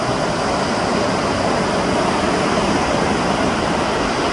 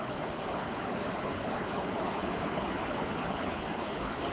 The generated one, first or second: second